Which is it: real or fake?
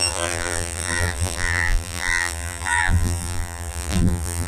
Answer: fake